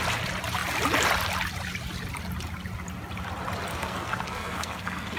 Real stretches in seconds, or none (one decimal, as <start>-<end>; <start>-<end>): 0.0-3.7